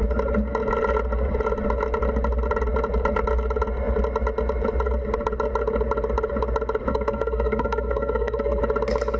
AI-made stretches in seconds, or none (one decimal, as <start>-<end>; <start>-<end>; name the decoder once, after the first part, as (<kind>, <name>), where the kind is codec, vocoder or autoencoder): 6.9-8.6 (codec, SNAC)